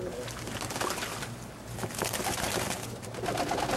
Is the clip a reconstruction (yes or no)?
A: no